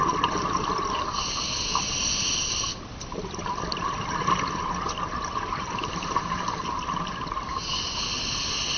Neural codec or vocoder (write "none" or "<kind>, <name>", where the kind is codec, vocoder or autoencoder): none